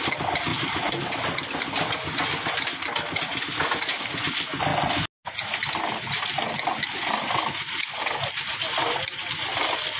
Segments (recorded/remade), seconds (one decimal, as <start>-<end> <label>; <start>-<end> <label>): 0.0-10.0 recorded